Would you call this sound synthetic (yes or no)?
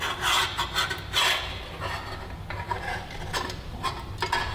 no